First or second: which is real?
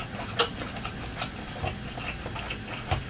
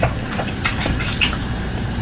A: first